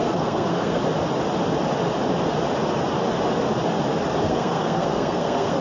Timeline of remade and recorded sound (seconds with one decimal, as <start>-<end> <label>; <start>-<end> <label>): 0.0-0.8 remade; 0.8-4.2 recorded; 4.2-5.6 remade